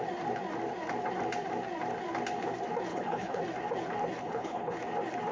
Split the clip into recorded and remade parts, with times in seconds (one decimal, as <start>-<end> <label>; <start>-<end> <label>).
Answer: 0.0-2.9 recorded; 2.9-3.4 remade; 3.4-4.2 recorded; 4.2-4.8 remade; 4.8-5.3 recorded